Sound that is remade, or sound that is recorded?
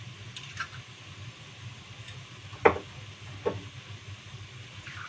recorded